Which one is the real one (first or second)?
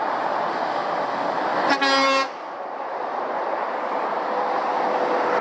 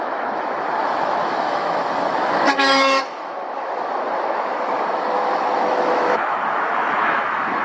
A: first